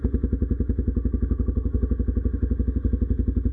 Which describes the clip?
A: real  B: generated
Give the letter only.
A